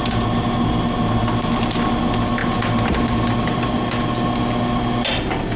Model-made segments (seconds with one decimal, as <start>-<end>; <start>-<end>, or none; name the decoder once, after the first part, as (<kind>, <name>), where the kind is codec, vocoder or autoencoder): none